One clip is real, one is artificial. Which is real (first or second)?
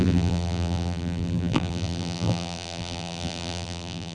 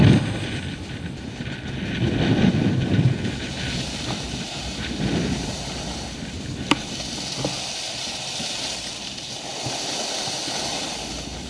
second